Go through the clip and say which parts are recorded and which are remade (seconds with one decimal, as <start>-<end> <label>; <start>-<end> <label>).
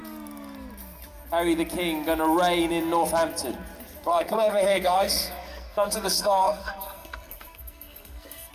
0.0-4.1 recorded; 4.1-8.5 remade